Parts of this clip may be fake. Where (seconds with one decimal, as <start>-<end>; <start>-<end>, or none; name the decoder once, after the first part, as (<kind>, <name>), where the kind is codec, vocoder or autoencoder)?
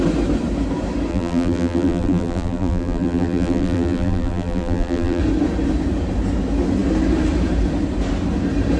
1.1-5.2 (vocoder, BigVGAN v2)